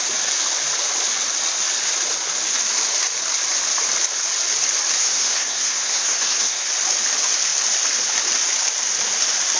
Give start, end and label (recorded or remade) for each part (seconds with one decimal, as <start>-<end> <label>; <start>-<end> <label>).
0.0-5.0 recorded; 5.0-6.7 remade; 6.7-9.6 recorded

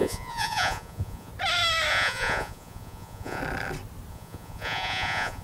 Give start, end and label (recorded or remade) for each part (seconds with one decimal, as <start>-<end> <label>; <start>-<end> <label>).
0.0-1.3 remade; 1.3-1.9 recorded; 1.9-3.4 remade; 3.4-4.1 recorded; 4.1-5.4 remade